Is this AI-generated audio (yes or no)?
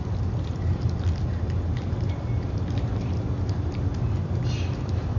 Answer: no